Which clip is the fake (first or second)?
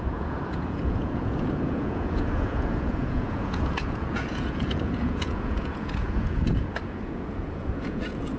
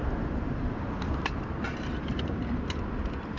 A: first